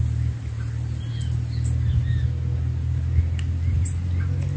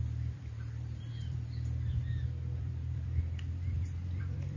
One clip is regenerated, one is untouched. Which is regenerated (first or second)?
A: second